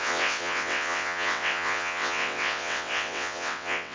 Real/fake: fake